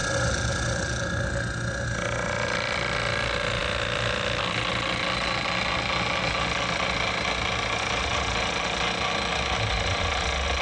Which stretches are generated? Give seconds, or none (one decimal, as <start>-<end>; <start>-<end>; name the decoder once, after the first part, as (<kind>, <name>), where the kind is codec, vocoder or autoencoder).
none